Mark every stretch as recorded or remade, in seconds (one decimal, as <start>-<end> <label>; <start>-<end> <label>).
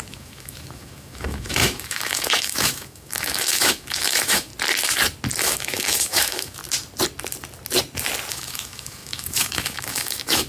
0.0-4.5 remade; 4.5-5.4 recorded; 5.4-6.6 remade; 6.6-8.3 recorded; 8.3-10.5 remade